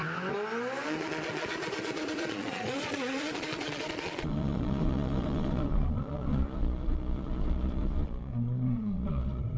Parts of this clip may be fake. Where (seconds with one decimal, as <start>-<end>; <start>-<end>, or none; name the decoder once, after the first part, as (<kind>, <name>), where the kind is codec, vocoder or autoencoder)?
0.8-9.6 (vocoder, Vocos)